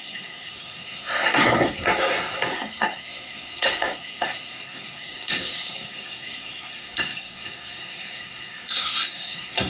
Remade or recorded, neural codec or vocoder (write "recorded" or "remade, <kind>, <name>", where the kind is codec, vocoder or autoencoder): remade, codec, SNAC